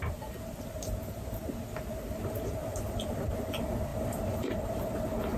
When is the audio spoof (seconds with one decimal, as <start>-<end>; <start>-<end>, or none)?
2.6-3.4; 3.9-5.0